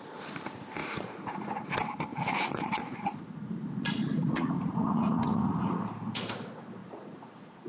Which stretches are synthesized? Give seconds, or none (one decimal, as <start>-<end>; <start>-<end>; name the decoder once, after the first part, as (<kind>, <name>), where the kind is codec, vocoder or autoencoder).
0.8-1.7 (vocoder, Vocos); 2.1-5.8; 6.8-7.7

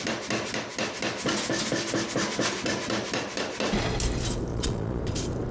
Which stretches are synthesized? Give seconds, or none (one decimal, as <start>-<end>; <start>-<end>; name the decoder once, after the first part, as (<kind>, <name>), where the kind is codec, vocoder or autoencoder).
4.5-5.0 (vocoder, Vocos)

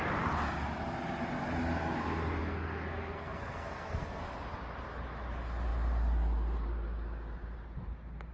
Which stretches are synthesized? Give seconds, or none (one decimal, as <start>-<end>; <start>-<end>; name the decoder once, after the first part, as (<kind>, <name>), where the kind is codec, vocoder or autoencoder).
2.4-4.2 (codec, SNAC)

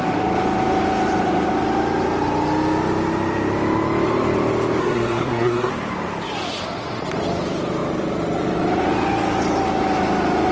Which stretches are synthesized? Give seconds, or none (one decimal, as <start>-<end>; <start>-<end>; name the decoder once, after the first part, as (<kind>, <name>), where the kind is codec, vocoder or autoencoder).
4.8-5.7 (codec, SNAC)

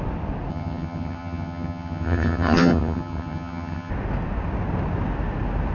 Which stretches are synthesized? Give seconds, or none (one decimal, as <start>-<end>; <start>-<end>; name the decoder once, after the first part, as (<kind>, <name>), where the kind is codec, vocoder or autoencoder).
0.5-3.9 (vocoder, HiFi-GAN)